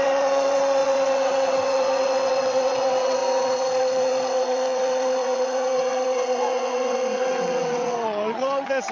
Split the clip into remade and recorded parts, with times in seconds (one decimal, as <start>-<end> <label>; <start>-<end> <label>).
0.0-8.9 remade